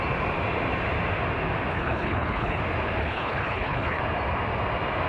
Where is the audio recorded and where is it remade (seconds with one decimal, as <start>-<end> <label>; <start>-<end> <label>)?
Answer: 0.0-1.7 recorded; 1.7-2.6 remade; 2.6-3.0 recorded; 3.0-4.0 remade; 4.0-5.1 recorded

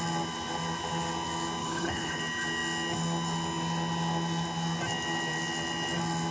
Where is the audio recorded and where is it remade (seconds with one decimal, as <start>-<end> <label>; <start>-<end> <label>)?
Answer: 0.0-1.6 recorded; 1.6-2.2 remade; 2.2-6.3 recorded

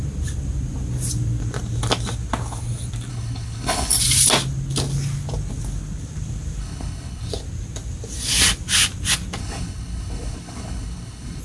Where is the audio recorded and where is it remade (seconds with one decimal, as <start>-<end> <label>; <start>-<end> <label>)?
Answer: 0.0-3.1 recorded; 3.1-4.0 remade; 4.0-6.6 recorded; 6.6-7.3 remade; 7.3-9.4 recorded; 9.4-11.4 remade